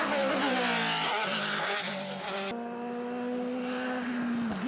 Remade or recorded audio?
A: recorded